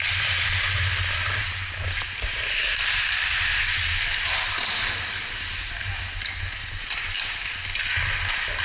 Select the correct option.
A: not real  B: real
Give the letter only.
B